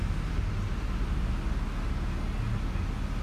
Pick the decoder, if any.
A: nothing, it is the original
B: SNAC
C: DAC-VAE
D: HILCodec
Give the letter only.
A